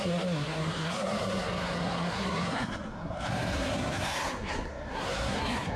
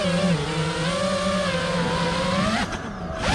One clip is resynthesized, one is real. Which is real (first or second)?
second